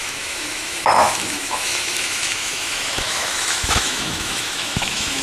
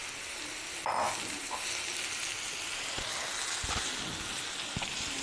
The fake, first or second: first